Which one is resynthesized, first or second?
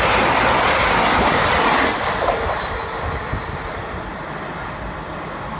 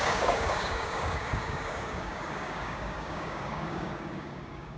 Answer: second